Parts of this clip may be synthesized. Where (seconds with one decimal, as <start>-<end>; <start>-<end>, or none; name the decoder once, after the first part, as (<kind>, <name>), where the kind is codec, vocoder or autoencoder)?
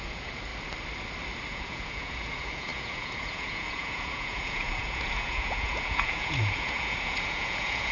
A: 0.0-0.5 (vocoder, Vocos); 1.5-7.9